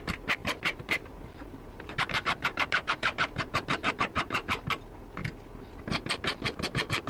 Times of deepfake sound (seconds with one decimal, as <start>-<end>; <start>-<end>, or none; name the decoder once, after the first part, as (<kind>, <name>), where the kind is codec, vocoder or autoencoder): 0.4-4.7 (vocoder, BigVGAN v2)